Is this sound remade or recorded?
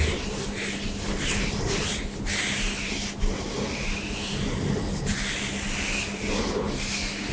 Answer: recorded